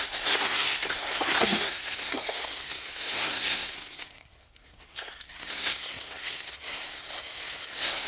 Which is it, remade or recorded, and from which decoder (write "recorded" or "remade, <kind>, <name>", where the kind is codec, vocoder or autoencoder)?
remade, codec, SNAC